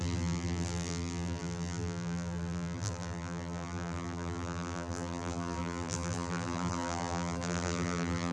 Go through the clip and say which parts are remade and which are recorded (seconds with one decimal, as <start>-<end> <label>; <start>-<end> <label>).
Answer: 0.0-8.3 remade

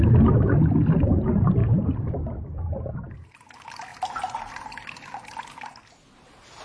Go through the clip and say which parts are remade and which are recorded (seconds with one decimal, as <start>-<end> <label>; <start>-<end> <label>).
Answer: 0.0-6.6 recorded

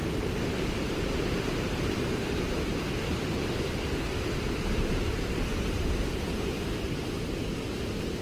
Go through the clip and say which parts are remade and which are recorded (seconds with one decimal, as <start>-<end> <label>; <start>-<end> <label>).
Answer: 0.0-4.9 remade; 4.9-8.2 recorded